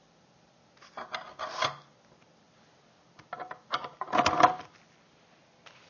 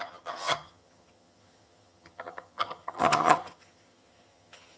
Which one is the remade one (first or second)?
second